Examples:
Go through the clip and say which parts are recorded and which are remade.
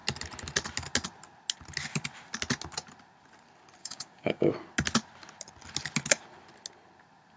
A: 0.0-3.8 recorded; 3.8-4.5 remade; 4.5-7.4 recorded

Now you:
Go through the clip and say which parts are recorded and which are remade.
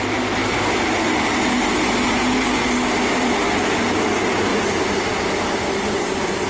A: 0.0-4.5 recorded; 4.5-5.2 remade; 5.2-6.5 recorded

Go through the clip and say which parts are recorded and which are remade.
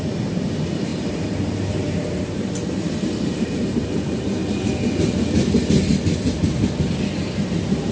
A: 0.0-4.4 remade; 4.4-7.5 recorded; 7.5-7.9 remade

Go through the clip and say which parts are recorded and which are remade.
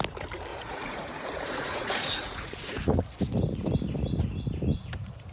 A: 0.0-0.5 recorded; 0.5-3.0 remade; 3.0-5.3 recorded